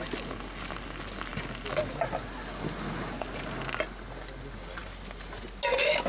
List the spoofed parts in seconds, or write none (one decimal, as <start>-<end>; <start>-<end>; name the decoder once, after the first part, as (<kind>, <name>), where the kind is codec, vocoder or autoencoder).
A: none